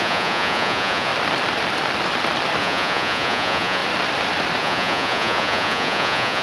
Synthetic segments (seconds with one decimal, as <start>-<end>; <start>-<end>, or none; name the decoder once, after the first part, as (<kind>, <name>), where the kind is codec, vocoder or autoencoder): 0.0-1.1 (vocoder, Vocos); 2.6-3.8; 4.6-6.4